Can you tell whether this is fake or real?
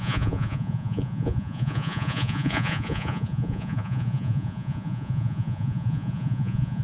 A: fake